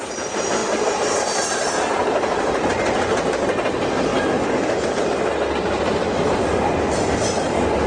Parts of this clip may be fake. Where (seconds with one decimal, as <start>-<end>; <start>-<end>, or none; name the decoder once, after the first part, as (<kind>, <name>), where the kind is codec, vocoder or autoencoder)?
0.6-1.2 (vocoder, BigVGAN v2)